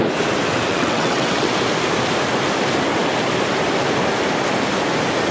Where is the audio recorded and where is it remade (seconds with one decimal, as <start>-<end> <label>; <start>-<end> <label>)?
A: 0.0-0.7 recorded; 0.7-1.5 remade; 1.5-5.3 recorded